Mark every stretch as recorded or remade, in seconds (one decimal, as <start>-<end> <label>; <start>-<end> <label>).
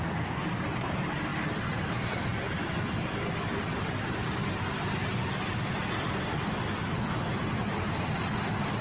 0.0-8.8 recorded